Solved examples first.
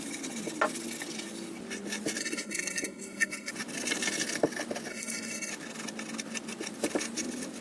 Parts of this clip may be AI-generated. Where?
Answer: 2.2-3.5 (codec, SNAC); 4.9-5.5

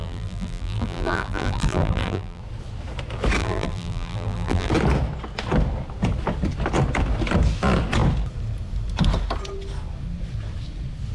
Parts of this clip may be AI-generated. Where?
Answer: 0.0-2.4 (vocoder, BigVGAN v2); 3.4-4.7

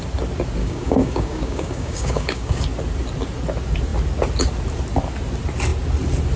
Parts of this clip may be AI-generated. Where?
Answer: 0.6-2.6 (codec, DAC)

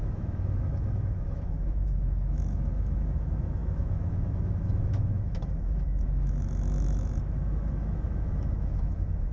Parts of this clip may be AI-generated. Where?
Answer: 0.0-9.3 (autoencoder, DAC-VAE)